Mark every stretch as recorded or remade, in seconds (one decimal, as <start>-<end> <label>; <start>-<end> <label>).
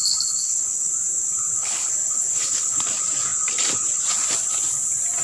0.0-0.4 recorded; 0.4-0.9 remade; 0.9-1.6 recorded; 1.6-2.8 remade; 2.8-5.2 recorded